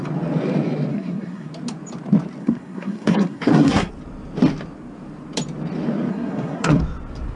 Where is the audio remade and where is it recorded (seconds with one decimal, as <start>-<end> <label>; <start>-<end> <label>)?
0.0-0.9 recorded; 0.9-1.5 remade; 1.5-2.4 recorded; 2.4-3.9 remade; 3.9-6.1 recorded; 6.1-6.8 remade; 6.8-7.4 recorded